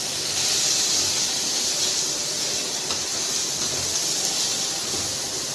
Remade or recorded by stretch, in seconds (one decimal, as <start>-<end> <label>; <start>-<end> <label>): 0.0-5.5 recorded